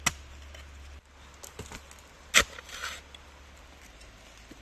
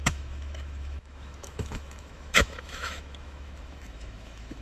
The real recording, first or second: first